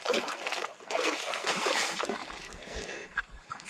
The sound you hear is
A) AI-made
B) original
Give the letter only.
A